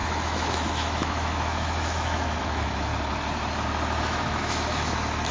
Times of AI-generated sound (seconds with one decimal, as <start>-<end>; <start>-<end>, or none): 0.0-2.9; 4.0-5.3